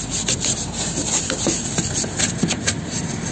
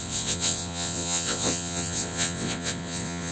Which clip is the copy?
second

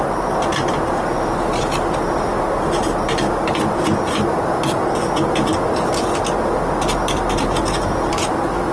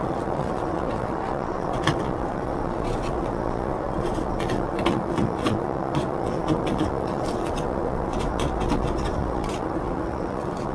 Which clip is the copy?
second